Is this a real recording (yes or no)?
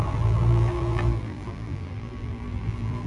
no